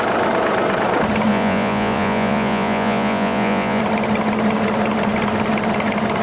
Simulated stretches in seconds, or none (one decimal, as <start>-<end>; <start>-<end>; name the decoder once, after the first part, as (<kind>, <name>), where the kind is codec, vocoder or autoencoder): 1.3-3.8 (vocoder, Vocos)